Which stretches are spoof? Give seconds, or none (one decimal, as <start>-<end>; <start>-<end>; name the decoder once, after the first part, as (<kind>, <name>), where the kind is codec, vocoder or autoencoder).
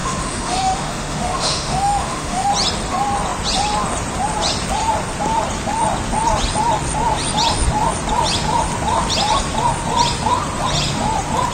0.0-2.5 (autoencoder, DAC-VAE)